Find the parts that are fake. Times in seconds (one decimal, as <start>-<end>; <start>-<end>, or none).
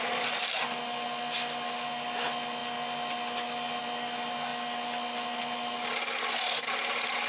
none